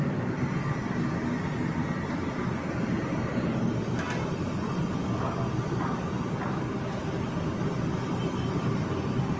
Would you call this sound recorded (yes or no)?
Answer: yes